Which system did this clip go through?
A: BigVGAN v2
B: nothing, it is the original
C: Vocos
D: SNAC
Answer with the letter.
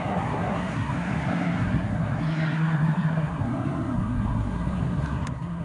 D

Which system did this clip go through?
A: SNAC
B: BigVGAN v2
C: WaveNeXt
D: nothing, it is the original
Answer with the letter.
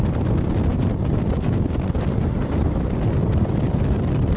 D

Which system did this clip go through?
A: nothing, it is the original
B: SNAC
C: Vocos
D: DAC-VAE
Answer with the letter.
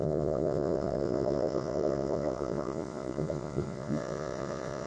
C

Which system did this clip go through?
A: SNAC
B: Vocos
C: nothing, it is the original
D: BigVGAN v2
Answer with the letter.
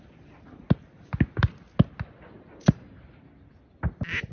C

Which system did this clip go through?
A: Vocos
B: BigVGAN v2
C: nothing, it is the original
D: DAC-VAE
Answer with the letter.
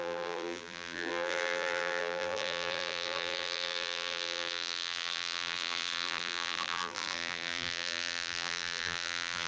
B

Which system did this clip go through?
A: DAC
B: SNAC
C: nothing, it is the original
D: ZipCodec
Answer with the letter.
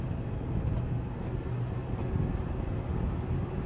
C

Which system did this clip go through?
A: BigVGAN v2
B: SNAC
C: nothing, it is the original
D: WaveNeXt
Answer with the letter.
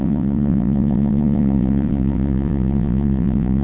D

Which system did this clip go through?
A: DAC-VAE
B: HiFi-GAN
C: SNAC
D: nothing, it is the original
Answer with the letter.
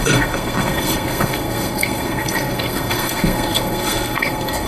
C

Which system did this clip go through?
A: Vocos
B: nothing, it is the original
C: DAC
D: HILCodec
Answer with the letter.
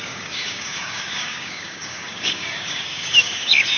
C